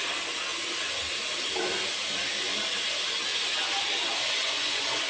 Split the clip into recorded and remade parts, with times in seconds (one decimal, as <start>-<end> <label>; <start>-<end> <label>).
0.0-4.4 recorded; 4.4-5.1 remade